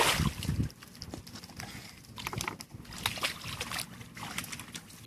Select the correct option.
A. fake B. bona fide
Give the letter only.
B